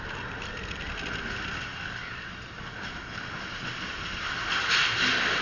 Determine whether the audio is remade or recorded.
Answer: recorded